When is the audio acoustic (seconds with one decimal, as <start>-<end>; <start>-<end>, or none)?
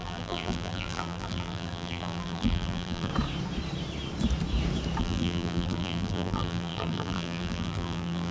3.1-5.0